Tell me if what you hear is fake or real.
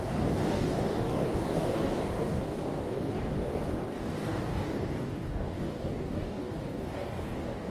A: fake